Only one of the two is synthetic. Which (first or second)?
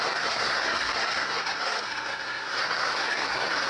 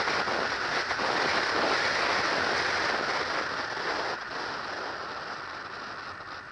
first